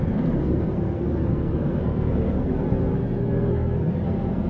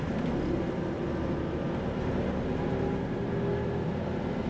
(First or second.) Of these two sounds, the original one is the second